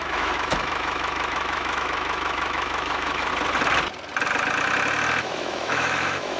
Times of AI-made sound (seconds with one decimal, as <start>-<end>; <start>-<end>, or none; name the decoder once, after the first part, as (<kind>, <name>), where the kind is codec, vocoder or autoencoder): 0.0-3.3 (autoencoder, DAC-VAE); 5.2-6.4